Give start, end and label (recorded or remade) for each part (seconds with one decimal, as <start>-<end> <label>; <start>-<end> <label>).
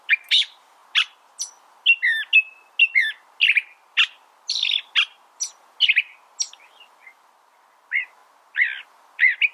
0.0-9.5 recorded